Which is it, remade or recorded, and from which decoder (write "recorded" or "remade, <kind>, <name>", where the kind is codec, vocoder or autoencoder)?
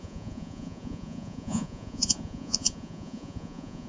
remade, vocoder, Vocos